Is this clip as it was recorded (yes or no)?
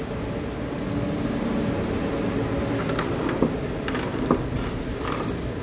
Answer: yes